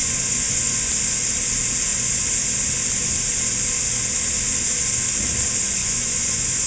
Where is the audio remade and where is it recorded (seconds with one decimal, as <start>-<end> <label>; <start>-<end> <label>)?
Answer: 0.0-0.9 remade; 0.9-5.8 recorded; 5.8-6.7 remade